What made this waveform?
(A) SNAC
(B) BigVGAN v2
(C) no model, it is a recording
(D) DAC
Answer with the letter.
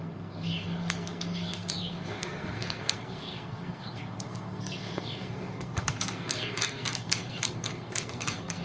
A